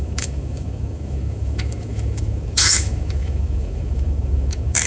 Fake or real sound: fake